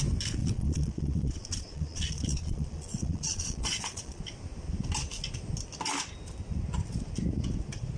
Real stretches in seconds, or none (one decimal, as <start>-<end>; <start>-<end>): 0.0-0.4; 4.2-8.0